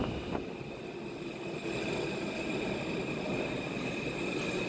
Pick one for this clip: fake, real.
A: real